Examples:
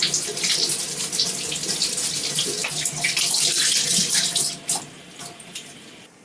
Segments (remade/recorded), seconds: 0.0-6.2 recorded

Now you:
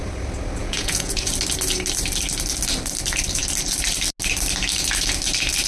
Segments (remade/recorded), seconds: 0.0-0.6 recorded; 0.6-1.3 remade; 1.3-5.7 recorded

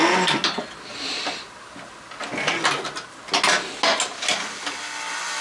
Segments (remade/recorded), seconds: 0.0-5.4 recorded

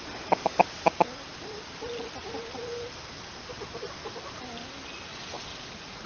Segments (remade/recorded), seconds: 0.0-5.1 recorded; 5.1-6.1 remade

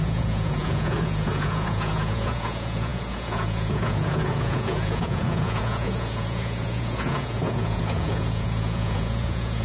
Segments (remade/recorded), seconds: 0.0-9.6 remade

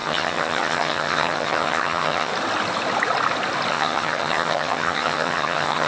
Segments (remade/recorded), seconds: 0.0-2.3 remade; 2.3-3.7 recorded; 3.7-5.9 remade

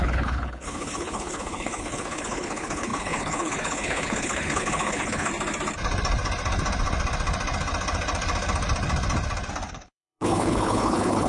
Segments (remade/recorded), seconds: 0.0-5.3 remade; 5.3-9.7 recorded; 9.7-11.3 remade